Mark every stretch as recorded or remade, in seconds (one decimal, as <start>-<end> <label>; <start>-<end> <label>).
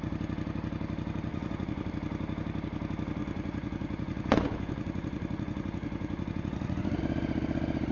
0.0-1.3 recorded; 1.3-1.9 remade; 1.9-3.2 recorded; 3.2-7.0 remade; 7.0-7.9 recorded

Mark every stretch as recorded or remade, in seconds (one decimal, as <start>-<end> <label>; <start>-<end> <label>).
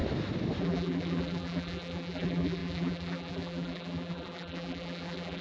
0.0-0.6 recorded; 0.6-5.4 remade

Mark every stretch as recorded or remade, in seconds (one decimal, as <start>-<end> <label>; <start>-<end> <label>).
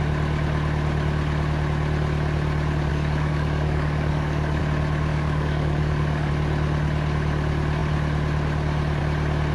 0.0-2.9 recorded; 2.9-4.6 remade; 4.6-5.1 recorded; 5.1-6.3 remade; 6.3-9.5 recorded